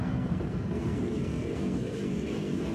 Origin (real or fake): fake